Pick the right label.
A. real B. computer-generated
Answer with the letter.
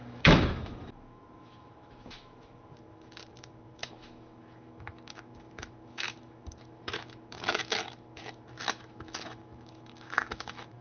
B